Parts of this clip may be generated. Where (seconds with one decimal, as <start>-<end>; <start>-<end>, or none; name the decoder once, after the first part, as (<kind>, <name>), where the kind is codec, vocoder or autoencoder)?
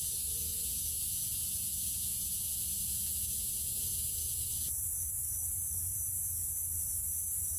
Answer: 0.5-5.1 (vocoder, Vocos); 5.9-6.5